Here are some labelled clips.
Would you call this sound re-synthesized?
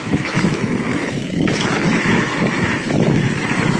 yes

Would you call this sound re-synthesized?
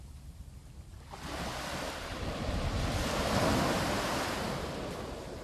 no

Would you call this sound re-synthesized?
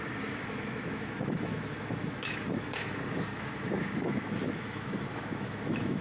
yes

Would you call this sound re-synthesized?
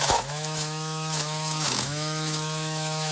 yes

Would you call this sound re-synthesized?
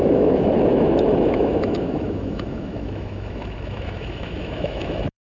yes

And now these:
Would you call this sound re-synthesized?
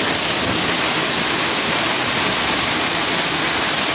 no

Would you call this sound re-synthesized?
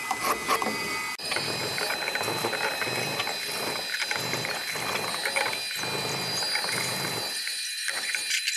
no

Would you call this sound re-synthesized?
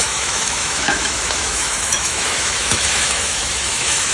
yes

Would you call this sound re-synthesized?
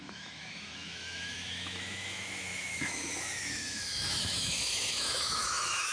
yes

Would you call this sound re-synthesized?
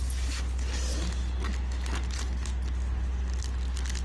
no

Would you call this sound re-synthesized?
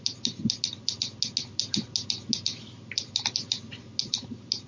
no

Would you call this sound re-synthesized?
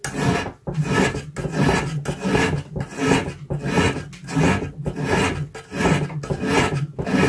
no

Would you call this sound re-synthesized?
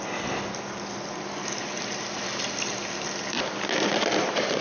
no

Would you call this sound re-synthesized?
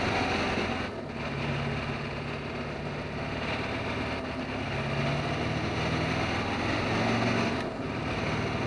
no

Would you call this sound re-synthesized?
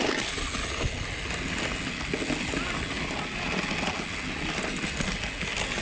no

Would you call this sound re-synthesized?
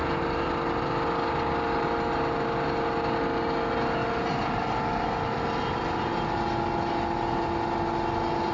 no